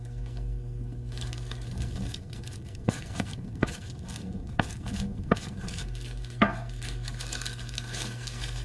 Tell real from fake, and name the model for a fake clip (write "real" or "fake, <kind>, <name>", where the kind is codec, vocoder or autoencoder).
fake, codec, SNAC